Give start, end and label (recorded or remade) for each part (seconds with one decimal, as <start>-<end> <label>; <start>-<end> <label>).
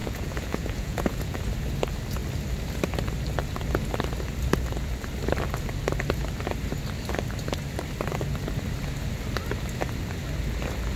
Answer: 0.0-1.4 remade; 1.4-11.0 recorded